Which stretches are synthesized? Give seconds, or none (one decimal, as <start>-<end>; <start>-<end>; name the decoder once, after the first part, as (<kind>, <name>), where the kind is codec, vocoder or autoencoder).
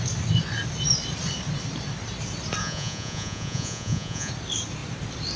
2.6-4.3 (vocoder, Vocos)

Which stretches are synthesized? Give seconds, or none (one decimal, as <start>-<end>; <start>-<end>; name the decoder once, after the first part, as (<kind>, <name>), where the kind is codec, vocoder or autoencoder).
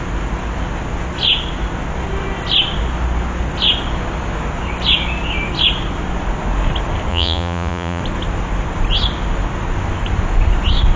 7.1-8.0 (vocoder, Vocos)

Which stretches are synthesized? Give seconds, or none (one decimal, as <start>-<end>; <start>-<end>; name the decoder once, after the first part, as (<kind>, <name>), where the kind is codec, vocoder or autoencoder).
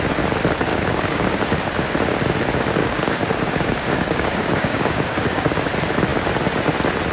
0.7-1.4 (codec, DAC); 2.8-5.6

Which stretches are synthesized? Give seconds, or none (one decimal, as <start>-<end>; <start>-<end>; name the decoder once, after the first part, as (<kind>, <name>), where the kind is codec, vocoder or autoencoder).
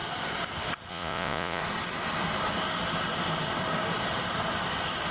0.9-1.6 (vocoder, Vocos)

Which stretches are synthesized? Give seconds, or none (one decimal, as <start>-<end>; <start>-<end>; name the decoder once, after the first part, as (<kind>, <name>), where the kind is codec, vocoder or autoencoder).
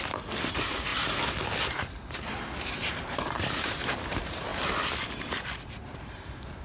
0.0-0.9 (vocoder, BigVGAN v2); 1.6-4.5; 5.2-6.6